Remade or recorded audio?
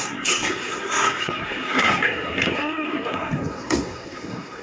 remade